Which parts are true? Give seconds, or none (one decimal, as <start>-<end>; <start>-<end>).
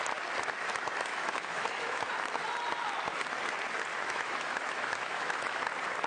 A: 0.0-1.1; 2.1-3.9; 5.6-6.1